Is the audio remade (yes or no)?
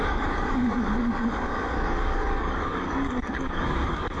yes